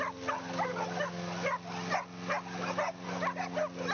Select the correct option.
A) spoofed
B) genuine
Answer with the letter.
B